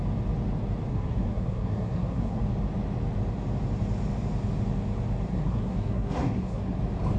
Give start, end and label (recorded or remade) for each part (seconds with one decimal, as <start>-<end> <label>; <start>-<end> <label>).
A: 0.0-0.9 recorded; 0.9-2.4 remade; 2.4-5.3 recorded; 5.3-6.8 remade; 6.8-7.2 recorded